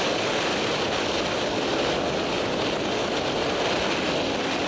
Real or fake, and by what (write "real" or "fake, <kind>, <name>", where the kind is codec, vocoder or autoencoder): real